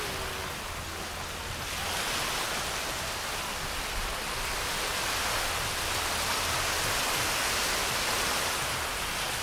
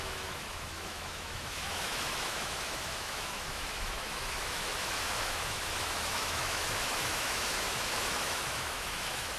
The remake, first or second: second